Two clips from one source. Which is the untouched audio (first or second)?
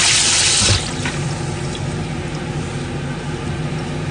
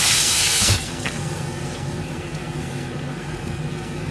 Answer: first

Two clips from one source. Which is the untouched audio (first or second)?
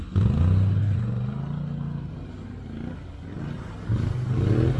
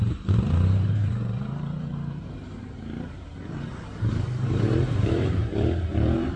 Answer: first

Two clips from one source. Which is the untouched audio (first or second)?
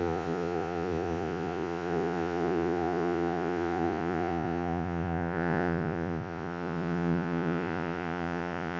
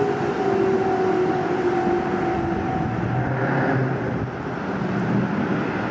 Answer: second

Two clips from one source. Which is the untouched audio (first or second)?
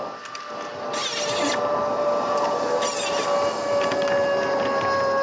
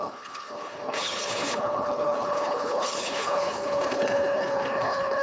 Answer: first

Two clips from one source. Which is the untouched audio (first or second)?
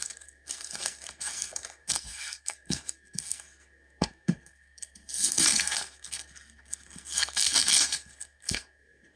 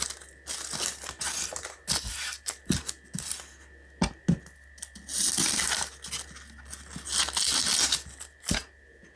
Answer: second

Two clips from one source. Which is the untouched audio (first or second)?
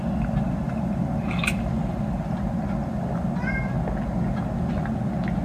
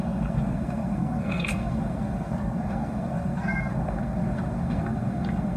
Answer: first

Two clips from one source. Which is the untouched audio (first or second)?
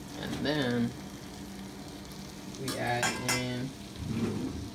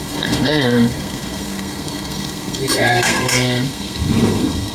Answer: first